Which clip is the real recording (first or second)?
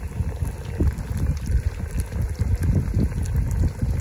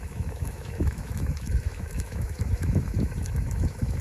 first